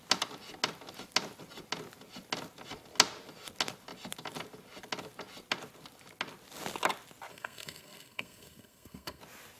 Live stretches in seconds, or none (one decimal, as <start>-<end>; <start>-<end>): 0.0-7.3; 9.2-9.6